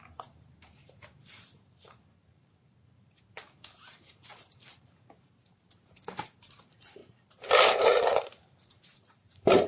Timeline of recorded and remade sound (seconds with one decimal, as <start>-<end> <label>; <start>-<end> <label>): 0.0-9.7 remade

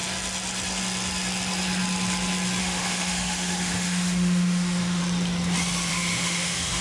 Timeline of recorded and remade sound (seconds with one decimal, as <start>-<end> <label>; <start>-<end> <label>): 0.0-2.6 recorded; 2.6-5.0 remade; 5.0-5.9 recorded; 5.9-6.8 remade

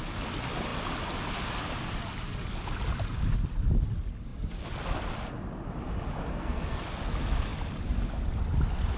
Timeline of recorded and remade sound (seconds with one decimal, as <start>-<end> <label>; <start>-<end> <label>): 0.0-6.3 recorded; 6.3-6.8 remade; 6.8-9.0 recorded

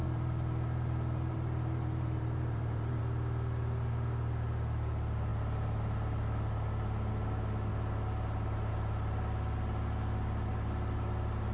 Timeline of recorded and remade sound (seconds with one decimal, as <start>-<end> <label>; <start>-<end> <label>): 0.0-3.0 remade; 3.0-11.5 recorded

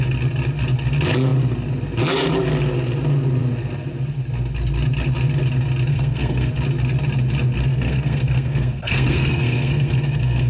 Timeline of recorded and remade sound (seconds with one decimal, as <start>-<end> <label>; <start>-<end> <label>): 0.0-5.9 recorded; 5.9-6.5 remade; 6.5-7.7 recorded; 7.7-10.5 remade

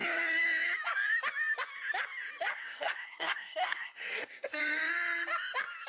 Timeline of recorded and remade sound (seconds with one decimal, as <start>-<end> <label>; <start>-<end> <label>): 0.0-2.5 recorded; 2.5-4.6 remade; 4.6-5.9 recorded

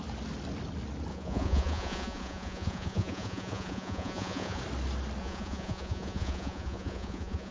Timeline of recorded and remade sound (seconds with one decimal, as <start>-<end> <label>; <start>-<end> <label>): 0.0-1.1 recorded; 1.1-4.6 remade; 4.6-5.2 recorded; 5.2-7.5 remade

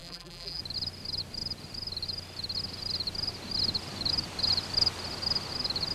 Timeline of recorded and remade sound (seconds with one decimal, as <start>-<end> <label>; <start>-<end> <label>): 0.0-0.6 remade; 0.6-5.9 recorded